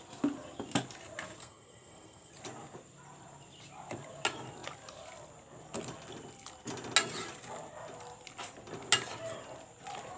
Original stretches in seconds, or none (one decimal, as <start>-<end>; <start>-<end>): 0.0-1.4; 2.3-10.2